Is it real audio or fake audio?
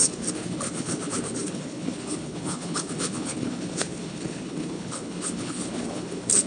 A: fake